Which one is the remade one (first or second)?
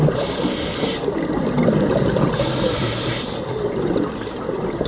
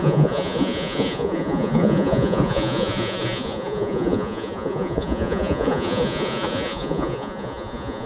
second